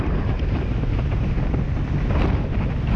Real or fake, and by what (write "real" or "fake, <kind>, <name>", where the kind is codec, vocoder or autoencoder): real